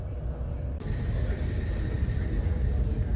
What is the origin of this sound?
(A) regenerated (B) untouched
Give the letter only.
B